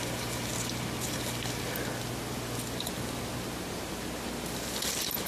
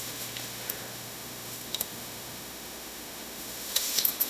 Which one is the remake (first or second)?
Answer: second